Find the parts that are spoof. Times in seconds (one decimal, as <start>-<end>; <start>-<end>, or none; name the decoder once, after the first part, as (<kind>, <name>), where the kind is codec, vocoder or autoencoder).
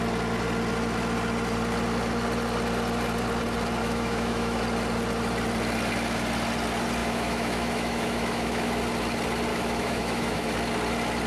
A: 3.8-4.6 (autoencoder, DAC-VAE); 7.0-8.8; 9.5-10.5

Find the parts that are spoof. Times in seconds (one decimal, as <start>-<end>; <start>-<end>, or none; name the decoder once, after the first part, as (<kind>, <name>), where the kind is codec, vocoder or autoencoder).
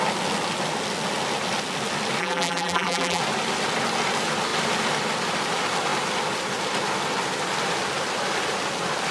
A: 2.2-3.2 (vocoder, BigVGAN v2)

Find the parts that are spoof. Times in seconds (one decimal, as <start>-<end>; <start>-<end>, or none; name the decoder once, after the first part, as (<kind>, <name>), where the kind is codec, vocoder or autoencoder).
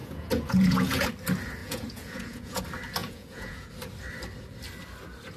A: 0.0-1.1 (vocoder, Vocos); 1.6-2.6; 3.0-3.7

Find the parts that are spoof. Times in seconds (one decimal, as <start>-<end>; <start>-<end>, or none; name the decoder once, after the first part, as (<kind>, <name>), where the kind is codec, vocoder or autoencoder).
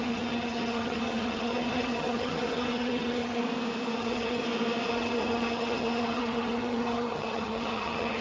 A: 0.0-3.4 (vocoder, HiFi-GAN); 4.0-4.4; 4.9-8.2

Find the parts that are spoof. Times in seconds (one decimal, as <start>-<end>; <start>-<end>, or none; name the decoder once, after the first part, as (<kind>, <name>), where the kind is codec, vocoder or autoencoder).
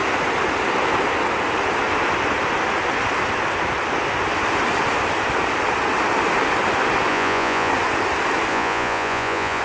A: 7.1-7.7 (vocoder, Vocos); 8.5-9.6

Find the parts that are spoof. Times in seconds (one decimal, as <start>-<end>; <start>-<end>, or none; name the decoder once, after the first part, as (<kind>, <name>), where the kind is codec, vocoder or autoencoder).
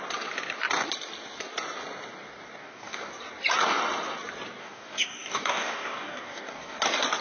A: 2.6-3.1 (codec, DAC); 4.6-6.8